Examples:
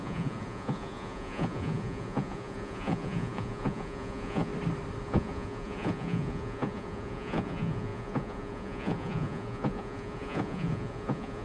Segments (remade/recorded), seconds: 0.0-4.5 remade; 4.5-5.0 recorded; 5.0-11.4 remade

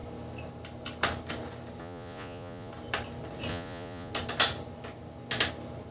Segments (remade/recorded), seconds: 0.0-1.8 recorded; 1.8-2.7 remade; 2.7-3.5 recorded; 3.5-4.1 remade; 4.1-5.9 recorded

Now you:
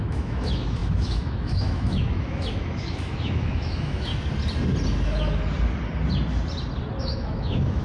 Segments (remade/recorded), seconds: 0.0-4.1 remade; 4.1-7.0 recorded; 7.0-7.8 remade